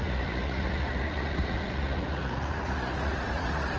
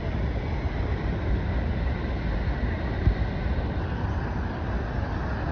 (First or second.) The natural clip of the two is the second